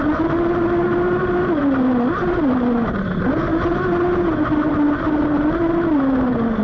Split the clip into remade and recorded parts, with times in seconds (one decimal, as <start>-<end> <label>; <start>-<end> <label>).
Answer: 0.0-6.6 recorded